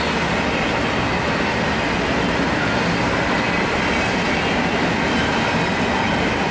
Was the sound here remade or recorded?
recorded